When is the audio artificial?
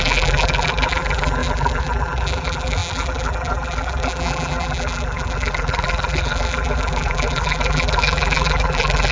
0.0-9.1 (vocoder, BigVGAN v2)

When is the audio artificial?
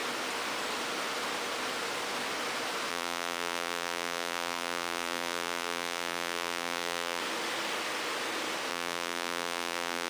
2.9-7.2 (vocoder, BigVGAN v2); 8.7-10.1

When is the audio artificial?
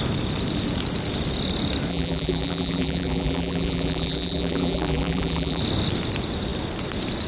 1.9-5.6 (vocoder, BigVGAN v2)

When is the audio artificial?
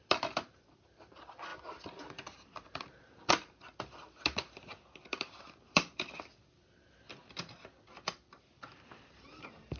1.5-3.3 (vocoder, BigVGAN v2)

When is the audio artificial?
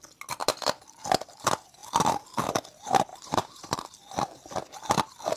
3.1-3.8 (vocoder, BigVGAN v2)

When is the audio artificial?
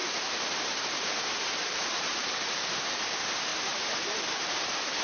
0.0-3.0 (vocoder, BigVGAN v2); 3.5-5.0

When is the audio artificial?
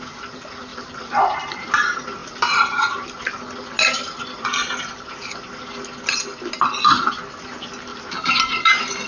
0.7-1.8 (vocoder, BigVGAN v2); 2.2-2.8; 7.9-9.1